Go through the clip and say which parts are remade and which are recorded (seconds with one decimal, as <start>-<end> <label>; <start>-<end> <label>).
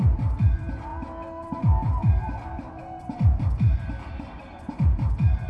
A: 0.0-0.9 remade; 0.9-2.2 recorded; 2.2-5.5 remade